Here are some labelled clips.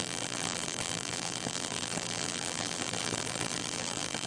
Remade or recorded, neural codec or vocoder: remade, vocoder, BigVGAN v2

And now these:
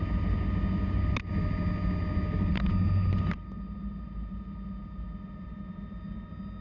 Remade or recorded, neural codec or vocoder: recorded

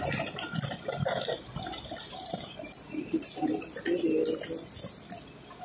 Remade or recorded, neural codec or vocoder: recorded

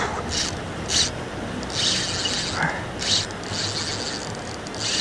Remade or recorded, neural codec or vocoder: recorded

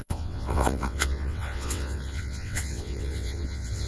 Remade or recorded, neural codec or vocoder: remade, vocoder, WaveNeXt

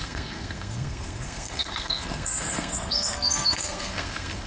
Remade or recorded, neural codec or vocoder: remade, codec, SNAC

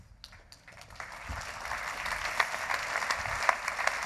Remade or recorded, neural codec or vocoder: recorded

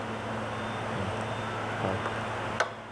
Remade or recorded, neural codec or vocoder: recorded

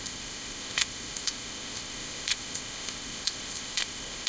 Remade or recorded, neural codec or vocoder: remade, codec, ZipCodec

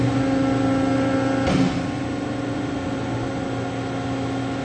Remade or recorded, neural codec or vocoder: recorded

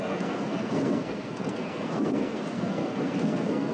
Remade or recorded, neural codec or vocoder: remade, codec, SNAC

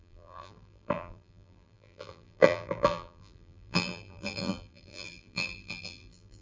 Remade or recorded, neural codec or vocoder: remade, vocoder, BigVGAN v2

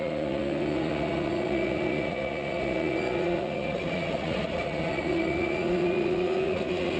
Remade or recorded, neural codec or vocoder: remade, vocoder, Vocos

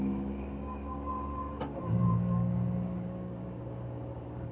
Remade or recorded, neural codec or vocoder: remade, codec, DAC